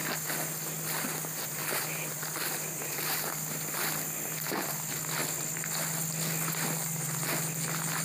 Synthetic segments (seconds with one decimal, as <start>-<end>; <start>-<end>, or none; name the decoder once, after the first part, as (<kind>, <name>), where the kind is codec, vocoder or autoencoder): none